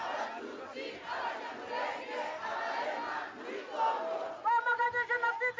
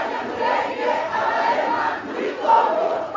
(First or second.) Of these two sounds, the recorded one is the first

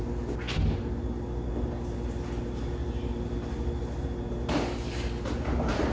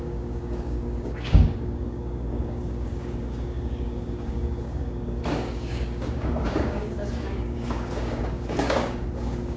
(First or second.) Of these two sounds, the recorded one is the first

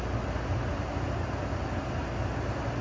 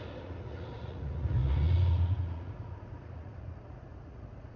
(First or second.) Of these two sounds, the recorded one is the first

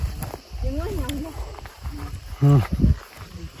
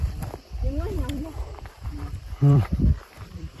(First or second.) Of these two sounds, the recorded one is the first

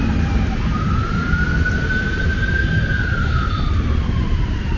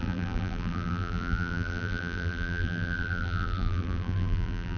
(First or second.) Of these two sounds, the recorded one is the first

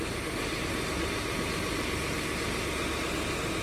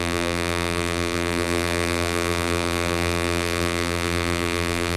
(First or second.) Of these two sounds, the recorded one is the first